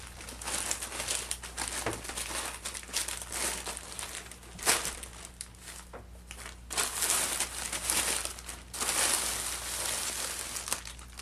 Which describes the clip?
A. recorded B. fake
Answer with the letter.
A